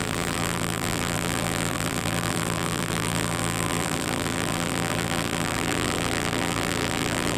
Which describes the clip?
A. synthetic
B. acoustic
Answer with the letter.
A